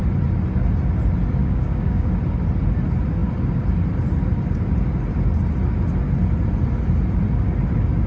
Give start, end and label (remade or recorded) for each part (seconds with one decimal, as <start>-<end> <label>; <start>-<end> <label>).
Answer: 0.0-1.4 recorded; 1.4-2.1 remade; 2.1-8.1 recorded